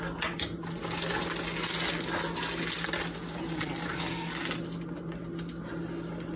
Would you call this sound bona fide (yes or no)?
yes